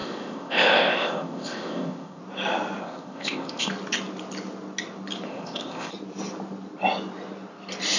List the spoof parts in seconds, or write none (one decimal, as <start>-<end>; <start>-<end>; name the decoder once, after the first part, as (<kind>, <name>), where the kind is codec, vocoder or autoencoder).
0.0-2.2 (codec, ZipCodec); 2.8-3.7; 5.3-5.9